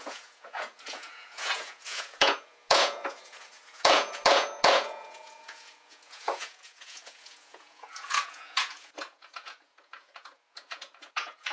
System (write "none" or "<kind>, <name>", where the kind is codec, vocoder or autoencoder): vocoder, Vocos